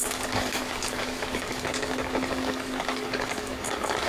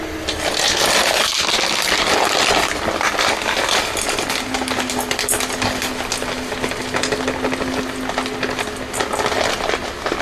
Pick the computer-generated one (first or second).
first